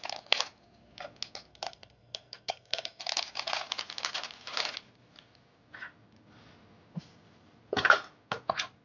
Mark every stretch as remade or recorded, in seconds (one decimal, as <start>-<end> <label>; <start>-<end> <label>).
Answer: 0.0-1.5 recorded; 1.5-3.0 remade; 3.0-8.8 recorded